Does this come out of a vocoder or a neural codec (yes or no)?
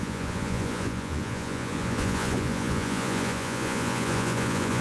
yes